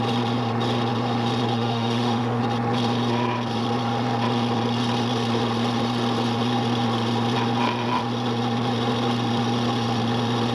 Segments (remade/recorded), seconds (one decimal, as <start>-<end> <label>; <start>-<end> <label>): 0.0-1.5 recorded; 1.5-2.4 remade; 2.4-10.5 recorded